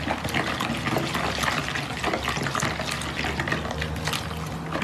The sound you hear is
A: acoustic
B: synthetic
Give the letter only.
A